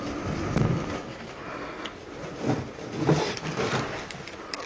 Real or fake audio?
real